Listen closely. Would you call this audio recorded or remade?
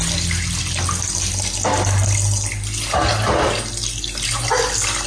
recorded